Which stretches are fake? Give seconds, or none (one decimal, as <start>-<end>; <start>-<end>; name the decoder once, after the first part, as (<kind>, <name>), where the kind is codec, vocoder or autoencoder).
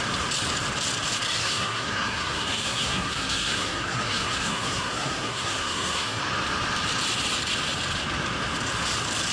1.4-6.2 (codec, SNAC)